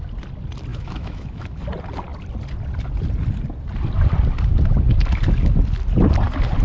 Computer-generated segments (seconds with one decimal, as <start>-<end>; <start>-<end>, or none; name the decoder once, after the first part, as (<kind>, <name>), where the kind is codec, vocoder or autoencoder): 0.7-1.6 (autoencoder, DAC-VAE)